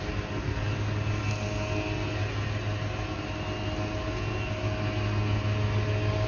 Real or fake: real